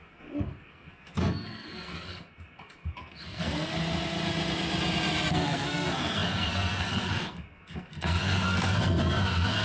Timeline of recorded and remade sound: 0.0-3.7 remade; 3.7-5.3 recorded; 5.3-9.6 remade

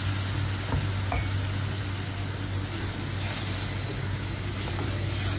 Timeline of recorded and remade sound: 0.0-5.4 recorded

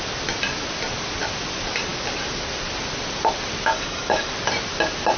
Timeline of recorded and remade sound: 0.0-3.7 recorded; 3.7-4.3 remade; 4.3-5.2 recorded

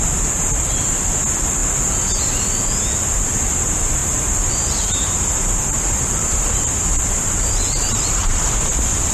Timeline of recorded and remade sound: 0.0-4.0 recorded; 4.0-8.7 remade; 8.7-9.1 recorded

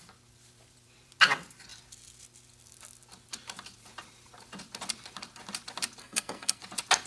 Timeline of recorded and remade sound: 0.0-6.0 recorded; 6.0-6.6 remade; 6.6-7.1 recorded

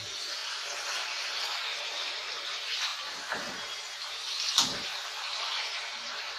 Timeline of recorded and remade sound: 0.0-0.4 remade; 0.4-1.8 recorded; 1.8-6.4 remade

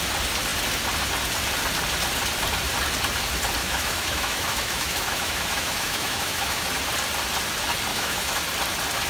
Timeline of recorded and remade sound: 0.0-3.6 recorded; 3.6-6.7 remade; 6.7-7.9 recorded; 7.9-8.4 remade; 8.4-9.1 recorded